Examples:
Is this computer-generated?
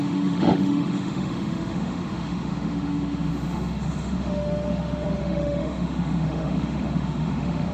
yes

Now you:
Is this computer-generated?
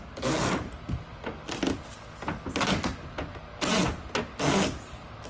no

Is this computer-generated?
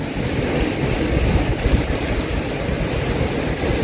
no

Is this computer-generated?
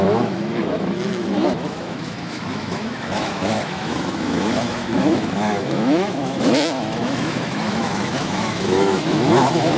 yes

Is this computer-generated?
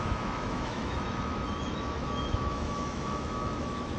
yes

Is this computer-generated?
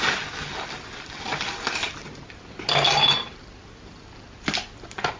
no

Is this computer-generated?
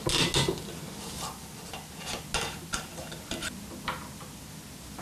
no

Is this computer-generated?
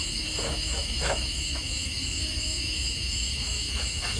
yes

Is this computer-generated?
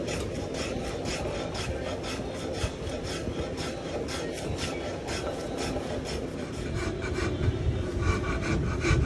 no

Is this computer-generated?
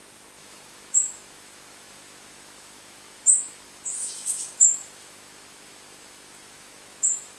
yes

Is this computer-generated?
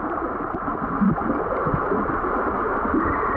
no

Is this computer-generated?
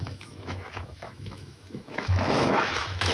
yes